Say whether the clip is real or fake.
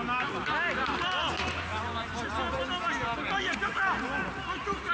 real